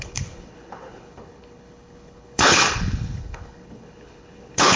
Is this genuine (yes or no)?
no